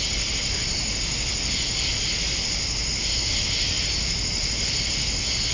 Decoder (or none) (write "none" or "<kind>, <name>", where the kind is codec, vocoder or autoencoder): none